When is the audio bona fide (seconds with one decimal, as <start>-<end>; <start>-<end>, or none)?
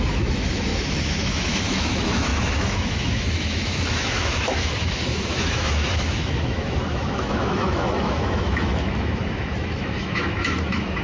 none